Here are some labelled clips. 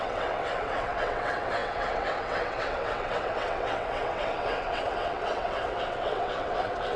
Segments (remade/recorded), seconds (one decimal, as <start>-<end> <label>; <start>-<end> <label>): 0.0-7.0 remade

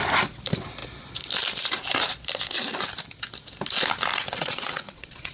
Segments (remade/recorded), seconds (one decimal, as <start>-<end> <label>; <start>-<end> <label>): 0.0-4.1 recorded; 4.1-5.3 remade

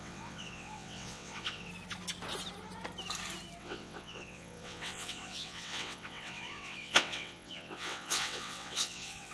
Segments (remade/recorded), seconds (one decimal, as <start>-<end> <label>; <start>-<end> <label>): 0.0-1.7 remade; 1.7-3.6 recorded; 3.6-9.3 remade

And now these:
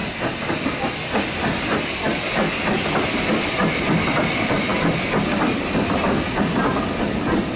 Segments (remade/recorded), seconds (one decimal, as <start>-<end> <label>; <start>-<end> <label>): 0.0-7.6 recorded